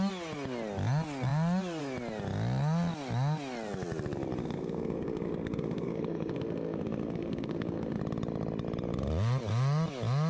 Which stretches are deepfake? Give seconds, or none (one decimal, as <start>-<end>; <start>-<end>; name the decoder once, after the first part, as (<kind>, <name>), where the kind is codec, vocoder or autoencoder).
4.4-8.0 (codec, SNAC)